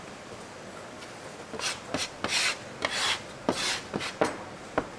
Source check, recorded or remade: recorded